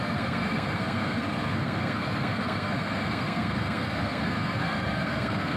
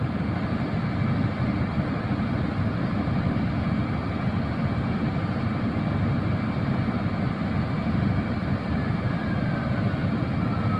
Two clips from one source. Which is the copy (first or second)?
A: first